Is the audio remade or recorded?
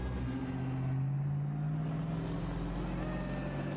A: recorded